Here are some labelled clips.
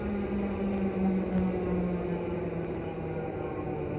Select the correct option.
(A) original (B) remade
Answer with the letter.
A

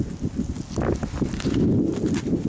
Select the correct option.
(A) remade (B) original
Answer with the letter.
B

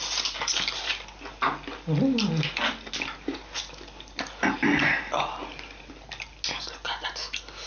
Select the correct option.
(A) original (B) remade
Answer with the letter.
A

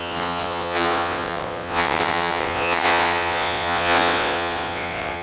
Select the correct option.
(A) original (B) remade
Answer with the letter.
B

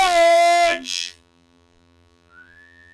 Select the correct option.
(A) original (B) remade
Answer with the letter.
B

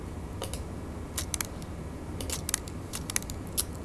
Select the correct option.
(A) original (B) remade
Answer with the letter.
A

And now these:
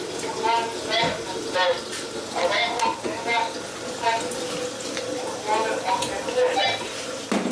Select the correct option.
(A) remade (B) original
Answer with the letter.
B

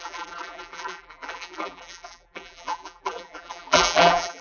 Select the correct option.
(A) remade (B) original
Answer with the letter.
A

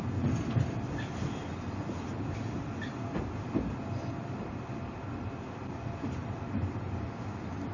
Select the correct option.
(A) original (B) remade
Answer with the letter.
B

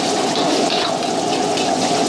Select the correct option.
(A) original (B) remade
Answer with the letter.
B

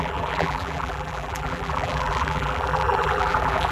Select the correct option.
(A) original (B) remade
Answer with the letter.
B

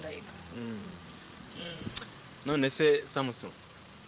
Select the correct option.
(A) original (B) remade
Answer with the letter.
B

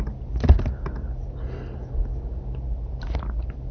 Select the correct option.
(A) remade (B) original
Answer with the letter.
B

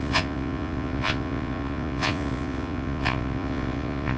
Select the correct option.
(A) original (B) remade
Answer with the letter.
B